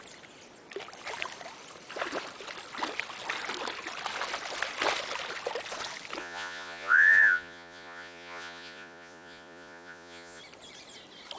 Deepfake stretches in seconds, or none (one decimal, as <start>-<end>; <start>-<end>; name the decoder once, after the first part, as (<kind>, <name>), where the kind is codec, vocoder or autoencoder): 6.2-10.4 (vocoder, Vocos)